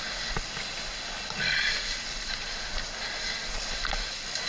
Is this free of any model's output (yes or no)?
yes